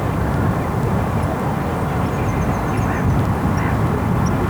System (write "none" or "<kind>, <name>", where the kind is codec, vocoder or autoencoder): none